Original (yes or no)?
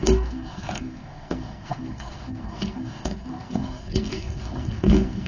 no